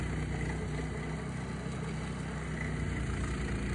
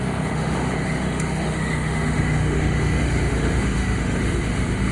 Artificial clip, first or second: second